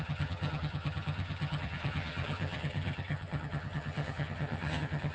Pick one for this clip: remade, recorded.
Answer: remade